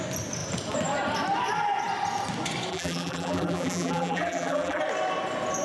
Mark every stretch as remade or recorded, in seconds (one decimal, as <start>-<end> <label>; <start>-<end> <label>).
0.0-2.7 recorded; 2.7-4.8 remade; 4.8-5.6 recorded